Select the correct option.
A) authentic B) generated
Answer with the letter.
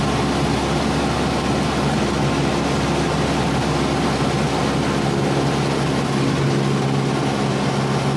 A